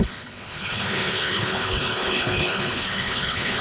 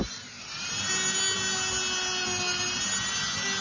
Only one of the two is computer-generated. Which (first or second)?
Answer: first